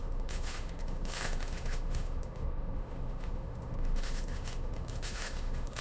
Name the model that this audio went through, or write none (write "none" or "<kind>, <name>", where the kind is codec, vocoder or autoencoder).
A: autoencoder, DAC-VAE